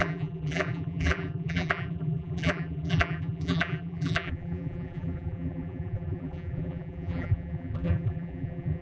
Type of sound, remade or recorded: remade